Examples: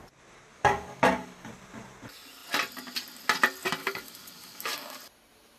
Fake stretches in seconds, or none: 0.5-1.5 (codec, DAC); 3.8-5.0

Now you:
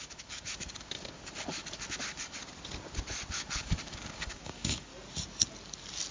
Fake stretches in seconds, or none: 0.0-2.4 (codec, DAC); 3.3-4.9